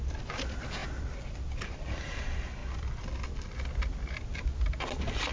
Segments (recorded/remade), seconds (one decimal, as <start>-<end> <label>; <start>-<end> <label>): 0.0-5.3 recorded